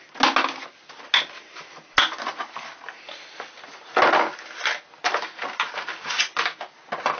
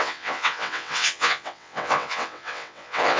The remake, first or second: second